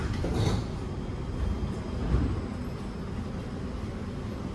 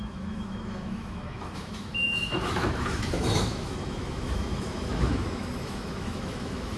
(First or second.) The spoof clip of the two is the second